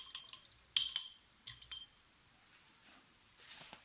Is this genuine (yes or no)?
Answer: yes